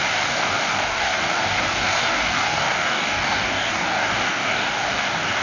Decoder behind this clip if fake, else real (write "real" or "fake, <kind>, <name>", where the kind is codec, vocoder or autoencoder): fake, codec, DAC